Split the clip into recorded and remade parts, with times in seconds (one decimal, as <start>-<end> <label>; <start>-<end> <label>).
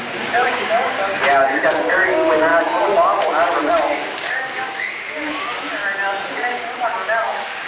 0.0-1.0 remade; 1.0-1.5 recorded; 1.5-2.5 remade; 2.5-3.7 recorded; 3.7-5.8 remade; 5.8-6.3 recorded; 6.3-7.7 remade